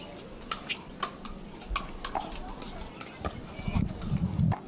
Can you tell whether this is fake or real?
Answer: real